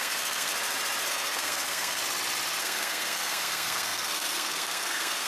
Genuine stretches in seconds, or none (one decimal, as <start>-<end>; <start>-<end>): 0.5-1.1; 2.0-2.6